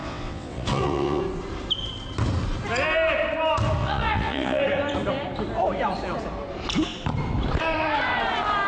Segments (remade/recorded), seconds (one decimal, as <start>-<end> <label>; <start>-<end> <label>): 0.0-1.2 remade; 1.2-3.8 recorded; 3.8-4.6 remade; 4.6-8.7 recorded